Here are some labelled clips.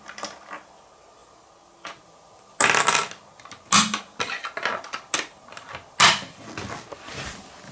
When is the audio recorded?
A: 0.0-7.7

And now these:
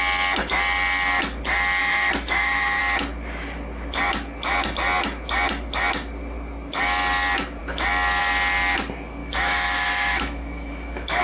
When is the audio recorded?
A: 0.0-1.8; 2.8-9.2